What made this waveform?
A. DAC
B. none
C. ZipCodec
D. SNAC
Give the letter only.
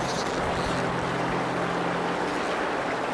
B